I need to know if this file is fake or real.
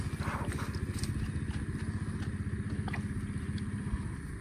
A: real